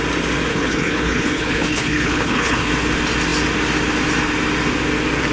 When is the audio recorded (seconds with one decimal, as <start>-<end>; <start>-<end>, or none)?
0.0-0.5; 2.7-5.3